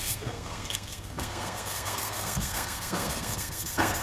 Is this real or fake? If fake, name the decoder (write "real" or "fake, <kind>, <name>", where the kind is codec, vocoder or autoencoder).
fake, codec, SNAC